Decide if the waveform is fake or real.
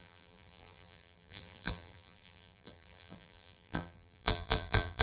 fake